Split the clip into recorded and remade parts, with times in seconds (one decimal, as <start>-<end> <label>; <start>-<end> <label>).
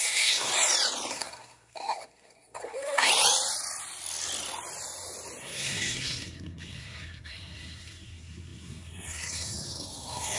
0.0-0.5 remade; 0.5-1.1 recorded; 1.1-3.1 remade; 3.1-5.4 recorded; 5.4-10.4 remade